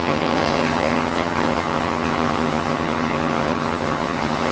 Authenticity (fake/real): fake